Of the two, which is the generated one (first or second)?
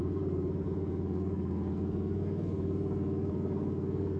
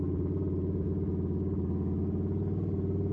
first